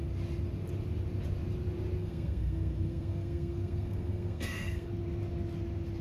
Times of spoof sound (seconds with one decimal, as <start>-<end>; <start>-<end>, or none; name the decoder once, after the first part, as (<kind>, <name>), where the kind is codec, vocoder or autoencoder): 2.0-4.9 (codec, SNAC)

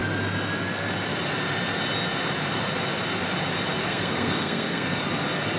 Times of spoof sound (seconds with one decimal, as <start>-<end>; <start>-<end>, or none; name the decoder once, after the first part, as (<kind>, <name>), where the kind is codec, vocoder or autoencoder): 3.8-5.0 (codec, SNAC)